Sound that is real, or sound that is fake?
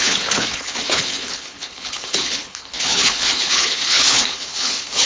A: fake